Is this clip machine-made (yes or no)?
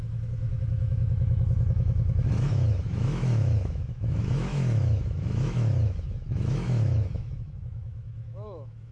yes